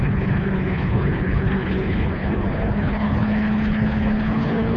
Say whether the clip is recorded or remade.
remade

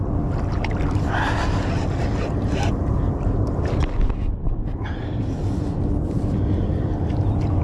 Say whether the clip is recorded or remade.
recorded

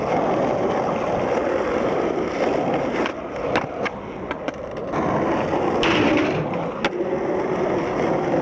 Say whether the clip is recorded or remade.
recorded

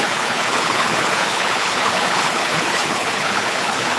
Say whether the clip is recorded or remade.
remade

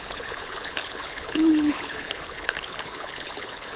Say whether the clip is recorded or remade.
remade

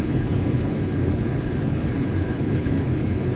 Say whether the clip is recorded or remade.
remade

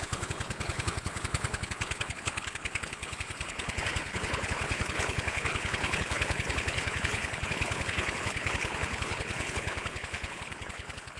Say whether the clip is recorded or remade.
remade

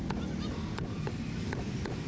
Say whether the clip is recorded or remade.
recorded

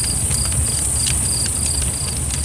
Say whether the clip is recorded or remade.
recorded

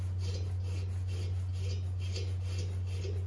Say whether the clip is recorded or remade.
recorded